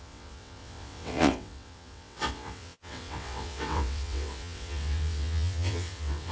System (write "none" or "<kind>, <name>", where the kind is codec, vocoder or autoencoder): vocoder, WaveNeXt